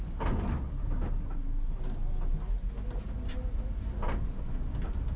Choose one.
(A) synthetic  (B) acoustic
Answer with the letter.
B